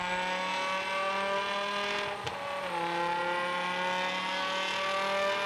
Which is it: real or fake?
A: real